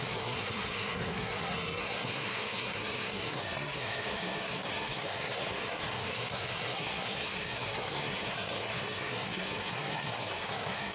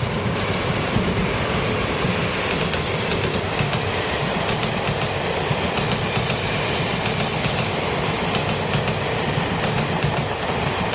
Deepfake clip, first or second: first